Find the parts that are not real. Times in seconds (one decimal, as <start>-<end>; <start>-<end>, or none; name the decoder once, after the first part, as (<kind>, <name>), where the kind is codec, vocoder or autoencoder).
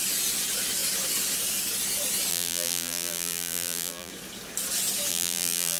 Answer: 2.3-4.1 (vocoder, BigVGAN v2); 5.1-5.8